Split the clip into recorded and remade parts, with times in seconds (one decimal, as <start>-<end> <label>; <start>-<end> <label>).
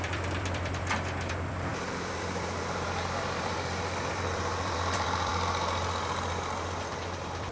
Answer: 0.0-5.3 remade; 5.3-6.3 recorded; 6.3-7.5 remade